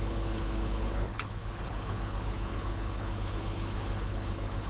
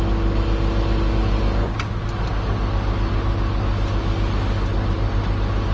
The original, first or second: second